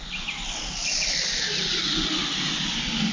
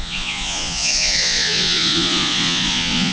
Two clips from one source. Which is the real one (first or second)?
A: first